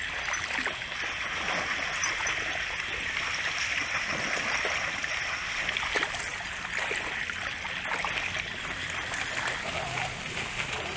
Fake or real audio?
real